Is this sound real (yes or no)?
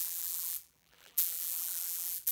no